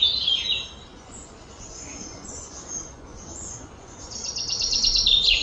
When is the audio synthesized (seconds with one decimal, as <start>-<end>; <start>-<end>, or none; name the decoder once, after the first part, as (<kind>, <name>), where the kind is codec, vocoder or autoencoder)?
0.9-4.1 (vocoder, Vocos)